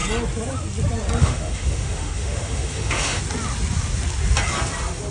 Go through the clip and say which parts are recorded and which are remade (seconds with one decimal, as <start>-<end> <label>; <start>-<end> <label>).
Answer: 0.0-1.2 recorded; 1.2-3.2 remade; 3.2-5.1 recorded